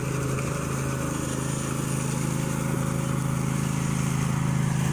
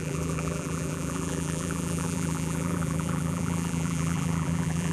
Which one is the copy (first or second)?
second